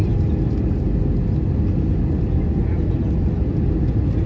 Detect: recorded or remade recorded